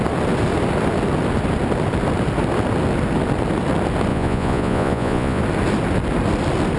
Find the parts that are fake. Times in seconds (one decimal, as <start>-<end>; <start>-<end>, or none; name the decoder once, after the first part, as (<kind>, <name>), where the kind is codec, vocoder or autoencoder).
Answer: 4.1-5.4 (vocoder, Vocos)